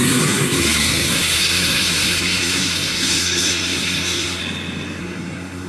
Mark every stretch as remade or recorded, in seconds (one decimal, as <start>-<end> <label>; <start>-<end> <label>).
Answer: 0.0-4.4 remade; 4.4-5.0 recorded; 5.0-5.7 remade